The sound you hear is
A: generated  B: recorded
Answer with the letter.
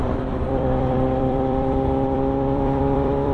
A